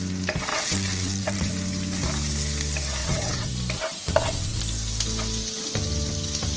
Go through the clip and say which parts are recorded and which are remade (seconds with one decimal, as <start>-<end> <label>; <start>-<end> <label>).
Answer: 0.0-0.5 recorded; 0.5-1.5 remade; 1.5-3.0 recorded; 3.0-3.5 remade; 3.5-3.9 recorded; 3.9-4.6 remade; 4.6-6.6 recorded